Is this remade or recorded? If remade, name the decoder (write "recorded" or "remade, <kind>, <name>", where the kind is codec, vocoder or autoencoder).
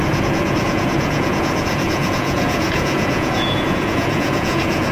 remade, vocoder, Vocos